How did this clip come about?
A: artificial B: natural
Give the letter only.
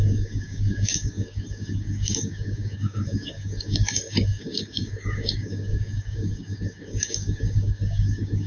A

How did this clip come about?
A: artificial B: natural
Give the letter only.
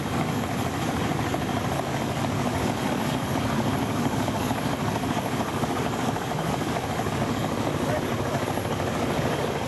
A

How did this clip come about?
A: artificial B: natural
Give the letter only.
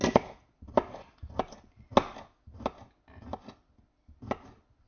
B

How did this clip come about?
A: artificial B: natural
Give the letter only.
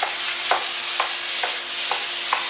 B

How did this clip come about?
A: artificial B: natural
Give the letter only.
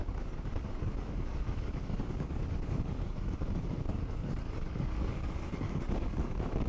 A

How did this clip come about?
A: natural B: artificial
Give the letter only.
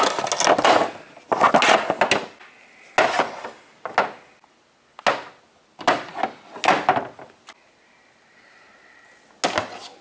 A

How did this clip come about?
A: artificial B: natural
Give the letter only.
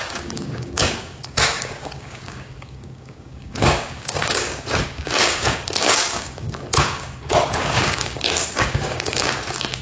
A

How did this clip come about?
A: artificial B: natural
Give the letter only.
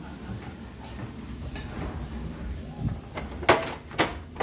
B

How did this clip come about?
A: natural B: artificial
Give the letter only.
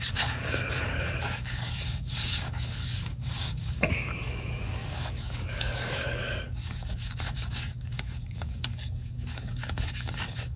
B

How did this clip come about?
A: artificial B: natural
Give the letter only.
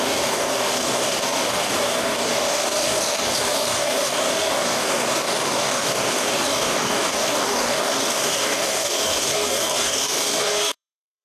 A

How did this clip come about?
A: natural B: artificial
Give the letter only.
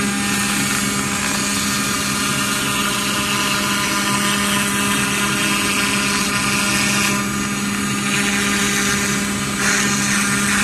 A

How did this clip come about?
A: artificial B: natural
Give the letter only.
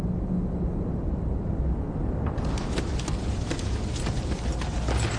B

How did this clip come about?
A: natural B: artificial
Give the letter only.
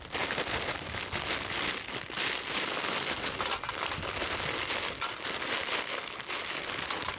A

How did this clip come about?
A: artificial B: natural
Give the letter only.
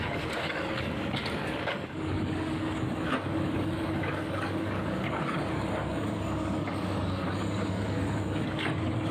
A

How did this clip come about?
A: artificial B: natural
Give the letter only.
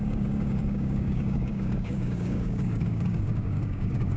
A